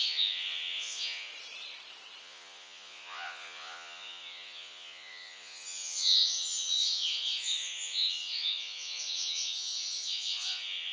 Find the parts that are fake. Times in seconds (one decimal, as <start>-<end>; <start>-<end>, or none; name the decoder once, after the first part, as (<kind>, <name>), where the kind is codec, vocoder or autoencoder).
0.0-1.3 (vocoder, Vocos); 2.2-10.9